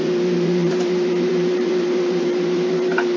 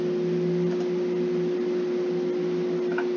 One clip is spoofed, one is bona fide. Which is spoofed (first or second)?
first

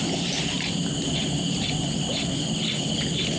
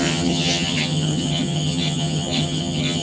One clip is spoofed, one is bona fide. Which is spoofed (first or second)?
second